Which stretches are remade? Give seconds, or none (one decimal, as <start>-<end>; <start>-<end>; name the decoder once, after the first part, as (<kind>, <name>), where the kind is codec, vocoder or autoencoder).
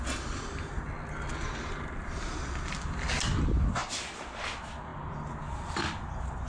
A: none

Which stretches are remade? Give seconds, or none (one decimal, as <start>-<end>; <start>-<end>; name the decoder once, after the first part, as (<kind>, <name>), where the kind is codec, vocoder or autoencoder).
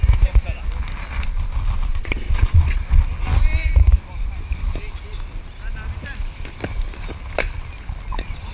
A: 1.9-3.0 (vocoder, Vocos)